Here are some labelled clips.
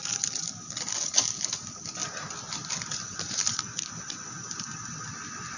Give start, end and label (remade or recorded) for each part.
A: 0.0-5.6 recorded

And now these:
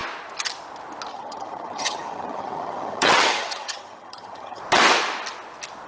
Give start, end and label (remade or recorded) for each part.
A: 0.0-1.1 recorded; 1.1-4.6 remade; 4.6-5.9 recorded

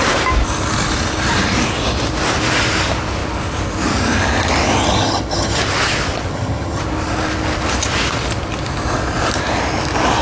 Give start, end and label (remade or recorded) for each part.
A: 0.0-4.8 recorded; 4.8-5.6 remade; 5.6-6.3 recorded; 6.3-6.8 remade; 6.8-10.2 recorded

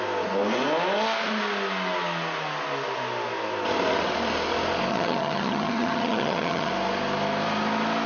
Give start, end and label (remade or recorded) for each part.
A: 0.0-4.9 recorded; 4.9-6.7 remade; 6.7-8.1 recorded

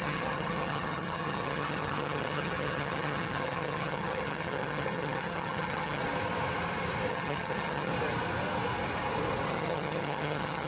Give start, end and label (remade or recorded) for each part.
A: 0.0-6.0 remade; 6.0-7.1 recorded; 7.1-7.9 remade; 7.9-9.5 recorded; 9.5-10.7 remade

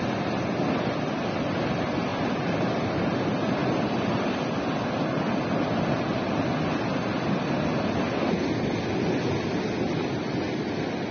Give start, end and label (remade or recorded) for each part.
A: 0.0-11.1 recorded